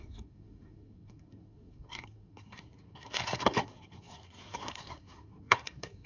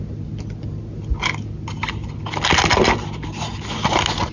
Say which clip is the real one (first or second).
second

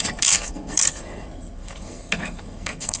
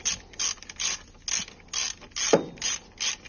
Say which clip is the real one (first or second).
second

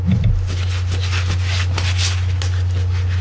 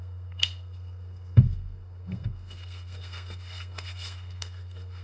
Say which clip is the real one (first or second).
first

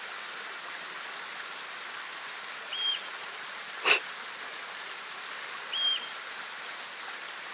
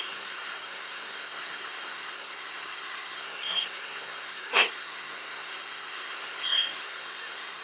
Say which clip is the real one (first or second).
first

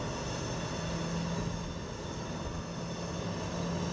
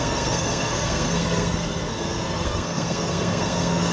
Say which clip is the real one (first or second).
first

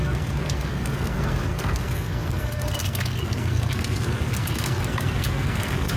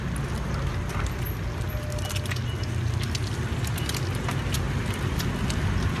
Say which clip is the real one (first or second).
second